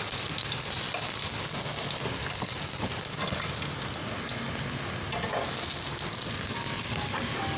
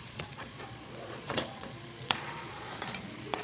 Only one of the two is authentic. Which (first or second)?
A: first